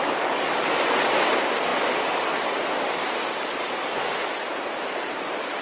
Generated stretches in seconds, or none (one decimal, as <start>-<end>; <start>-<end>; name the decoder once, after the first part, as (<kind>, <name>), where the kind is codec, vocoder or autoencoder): none